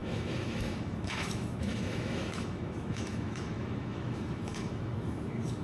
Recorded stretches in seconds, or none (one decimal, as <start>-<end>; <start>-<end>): none